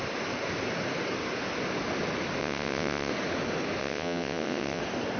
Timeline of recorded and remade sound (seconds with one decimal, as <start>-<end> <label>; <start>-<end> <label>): 0.0-2.4 recorded; 2.4-3.1 remade; 3.1-3.8 recorded; 3.8-4.8 remade; 4.8-5.2 recorded

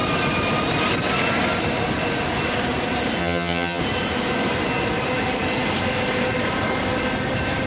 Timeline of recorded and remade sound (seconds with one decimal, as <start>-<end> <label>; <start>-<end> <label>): 0.0-3.2 recorded; 3.2-3.8 remade; 3.8-7.7 recorded

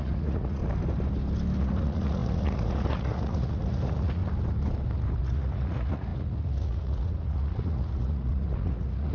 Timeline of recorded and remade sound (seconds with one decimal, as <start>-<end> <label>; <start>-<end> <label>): 0.0-0.6 remade; 0.6-1.6 recorded; 1.6-4.2 remade; 4.2-5.2 recorded; 5.2-9.1 remade

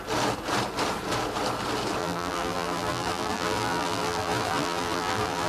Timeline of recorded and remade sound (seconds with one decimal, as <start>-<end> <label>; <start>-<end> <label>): 0.0-2.0 recorded; 2.0-5.5 remade

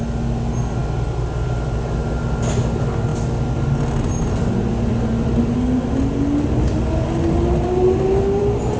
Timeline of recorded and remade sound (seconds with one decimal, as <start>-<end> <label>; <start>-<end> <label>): 0.0-8.8 recorded

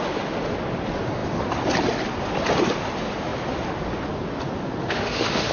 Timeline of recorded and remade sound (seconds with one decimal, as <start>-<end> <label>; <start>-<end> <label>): 0.0-4.8 recorded; 4.8-5.5 remade

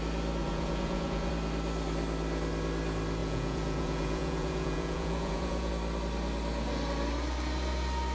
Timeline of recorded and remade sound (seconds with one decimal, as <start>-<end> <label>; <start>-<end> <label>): 0.0-0.4 recorded; 0.4-1.3 remade; 1.3-3.2 recorded; 3.2-5.7 remade; 5.7-8.1 recorded